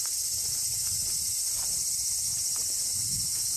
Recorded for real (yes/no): yes